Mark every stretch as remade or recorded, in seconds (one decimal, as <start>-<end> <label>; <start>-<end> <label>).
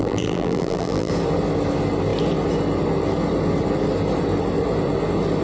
0.0-1.1 remade; 1.1-5.4 recorded